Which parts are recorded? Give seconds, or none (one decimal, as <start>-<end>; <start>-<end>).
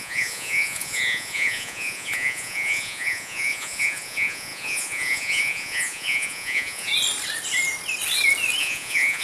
6.9-8.6